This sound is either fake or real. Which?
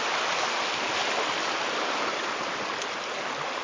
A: real